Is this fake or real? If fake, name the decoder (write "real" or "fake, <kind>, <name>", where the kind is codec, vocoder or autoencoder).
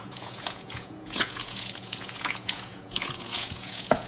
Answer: fake, vocoder, Vocos